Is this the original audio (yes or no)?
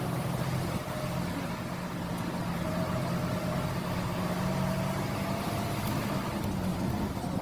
yes